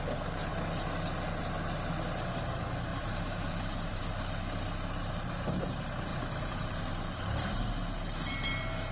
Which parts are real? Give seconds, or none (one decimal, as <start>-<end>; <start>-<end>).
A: 0.0-2.9; 4.0-5.0; 5.5-6.1; 7.7-8.9